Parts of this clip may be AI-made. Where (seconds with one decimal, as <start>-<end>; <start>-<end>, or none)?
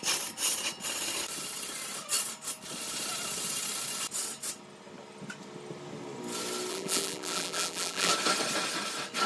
6.7-8.1